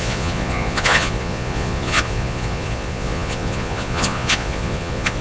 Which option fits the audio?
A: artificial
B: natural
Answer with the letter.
A